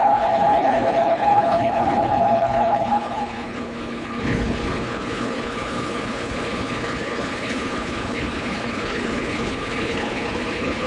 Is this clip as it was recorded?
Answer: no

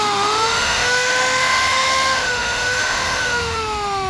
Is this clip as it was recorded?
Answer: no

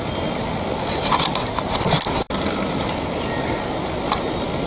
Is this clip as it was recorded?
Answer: yes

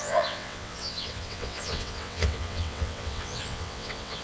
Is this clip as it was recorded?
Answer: no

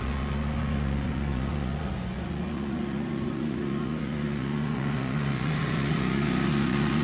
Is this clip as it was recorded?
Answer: no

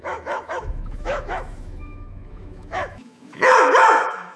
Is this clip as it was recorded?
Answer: no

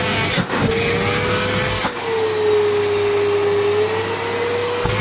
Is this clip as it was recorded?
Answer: yes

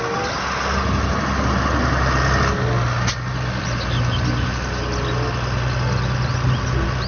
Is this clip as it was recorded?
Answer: yes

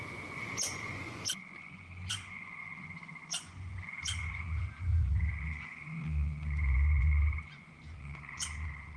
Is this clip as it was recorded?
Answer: no